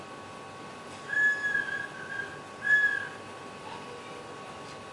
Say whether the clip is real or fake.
real